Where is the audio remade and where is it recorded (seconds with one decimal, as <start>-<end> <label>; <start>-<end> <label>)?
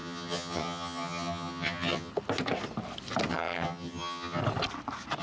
0.0-2.1 remade; 2.1-3.3 recorded; 3.3-4.4 remade; 4.4-5.2 recorded